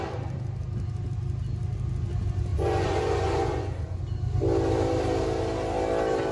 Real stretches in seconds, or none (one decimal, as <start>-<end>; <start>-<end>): 0.0-2.5; 4.0-6.3